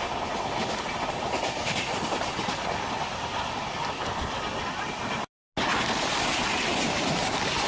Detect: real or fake real